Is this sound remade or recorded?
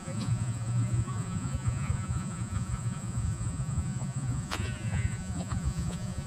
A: remade